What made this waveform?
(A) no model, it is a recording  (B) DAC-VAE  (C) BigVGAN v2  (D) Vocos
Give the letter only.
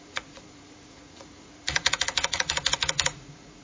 D